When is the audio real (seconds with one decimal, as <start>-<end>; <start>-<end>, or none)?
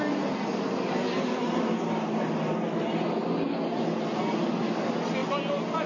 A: 0.0-5.9